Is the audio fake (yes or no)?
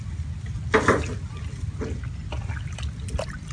no